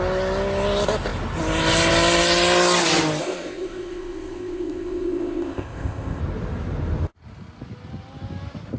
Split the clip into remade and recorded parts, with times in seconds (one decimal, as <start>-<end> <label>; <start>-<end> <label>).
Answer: 0.0-3.2 recorded; 3.2-6.2 remade; 6.2-8.8 recorded